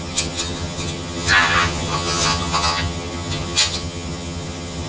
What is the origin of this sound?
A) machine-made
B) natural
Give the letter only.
A